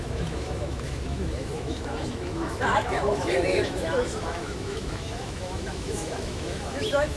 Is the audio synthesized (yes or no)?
yes